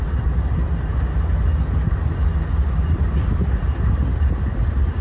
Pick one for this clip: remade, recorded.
recorded